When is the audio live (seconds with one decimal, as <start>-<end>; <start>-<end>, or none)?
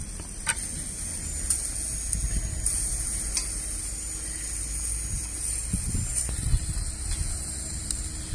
0.0-8.3